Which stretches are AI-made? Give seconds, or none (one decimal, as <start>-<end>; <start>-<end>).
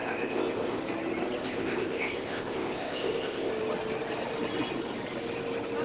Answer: 0.0-0.8; 1.4-3.5